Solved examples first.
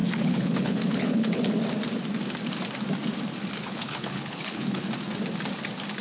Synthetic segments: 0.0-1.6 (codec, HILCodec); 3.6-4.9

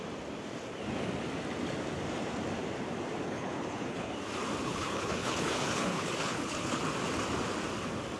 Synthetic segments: 3.2-4.1 (codec, HILCodec); 4.6-6.8

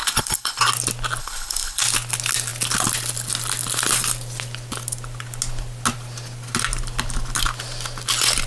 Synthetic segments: 0.0-0.6 (codec, HILCodec); 1.2-1.8

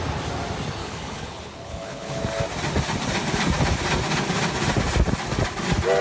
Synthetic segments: 0.8-2.2 (codec, HILCodec)

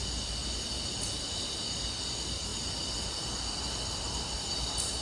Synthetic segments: none